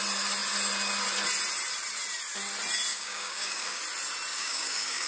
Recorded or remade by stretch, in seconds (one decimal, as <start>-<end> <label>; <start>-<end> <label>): 0.0-2.9 recorded; 2.9-3.8 remade; 3.8-4.3 recorded; 4.3-5.1 remade